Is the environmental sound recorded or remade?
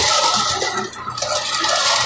recorded